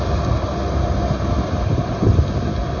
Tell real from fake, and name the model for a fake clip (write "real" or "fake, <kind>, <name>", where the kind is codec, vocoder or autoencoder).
real